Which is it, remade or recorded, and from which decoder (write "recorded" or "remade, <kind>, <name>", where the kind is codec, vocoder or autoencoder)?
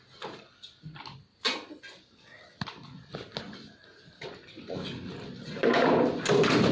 recorded